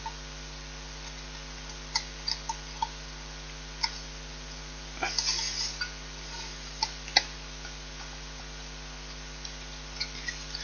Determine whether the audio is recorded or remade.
recorded